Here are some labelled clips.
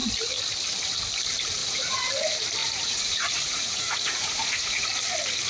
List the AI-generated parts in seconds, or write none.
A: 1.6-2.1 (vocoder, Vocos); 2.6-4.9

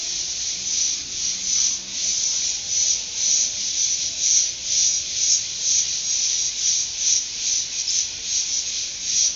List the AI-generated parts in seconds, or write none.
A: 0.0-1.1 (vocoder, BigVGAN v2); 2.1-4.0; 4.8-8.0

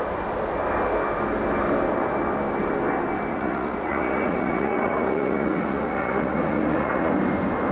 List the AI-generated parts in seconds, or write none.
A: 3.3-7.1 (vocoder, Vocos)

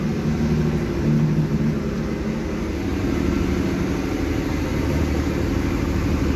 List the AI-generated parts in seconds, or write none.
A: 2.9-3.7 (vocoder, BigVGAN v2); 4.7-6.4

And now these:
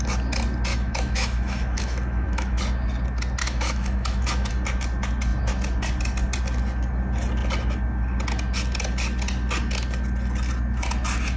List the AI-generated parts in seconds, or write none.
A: 0.7-2.6 (autoencoder, DAC-VAE); 3.4-4.5

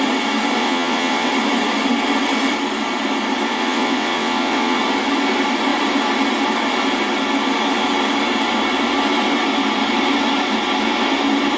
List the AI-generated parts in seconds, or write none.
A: 0.6-1.3 (vocoder, WaveNeXt); 3.5-4.8